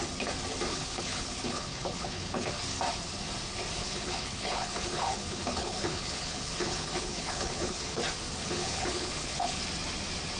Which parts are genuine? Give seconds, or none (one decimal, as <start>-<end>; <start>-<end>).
0.0-0.7; 2.5-3.8; 8.0-8.4; 9.6-10.4